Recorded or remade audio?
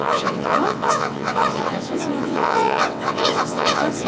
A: remade